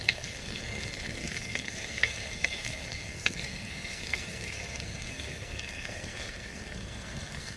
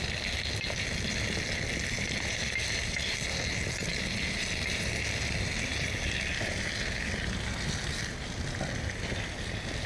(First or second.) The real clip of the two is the second